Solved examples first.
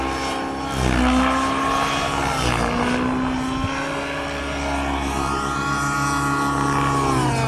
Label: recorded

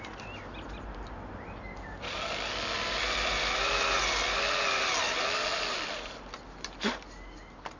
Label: recorded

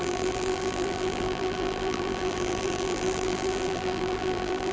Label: remade